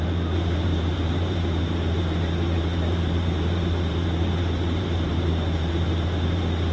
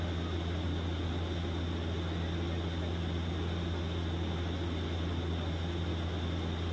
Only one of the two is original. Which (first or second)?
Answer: second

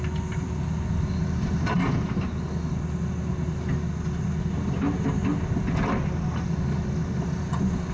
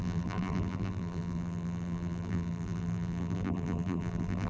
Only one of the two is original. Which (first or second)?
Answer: first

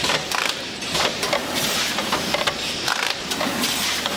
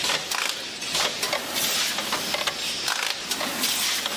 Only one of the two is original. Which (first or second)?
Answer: second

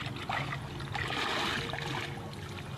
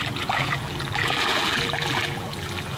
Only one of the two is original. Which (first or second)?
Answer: first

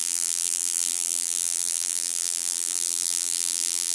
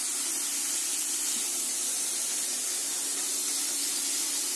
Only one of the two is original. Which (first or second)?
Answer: second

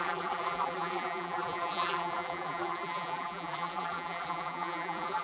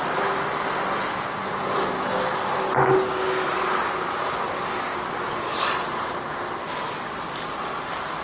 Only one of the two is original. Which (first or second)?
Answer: second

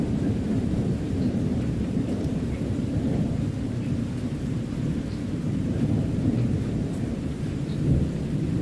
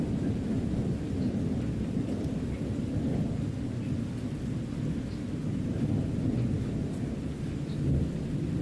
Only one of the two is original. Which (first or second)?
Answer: second